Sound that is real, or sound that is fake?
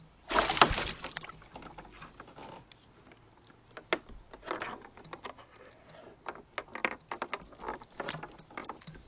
real